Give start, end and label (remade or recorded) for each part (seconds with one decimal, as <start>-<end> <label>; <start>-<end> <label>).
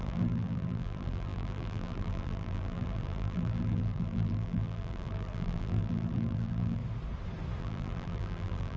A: 0.0-6.8 remade; 6.8-7.6 recorded; 7.6-8.8 remade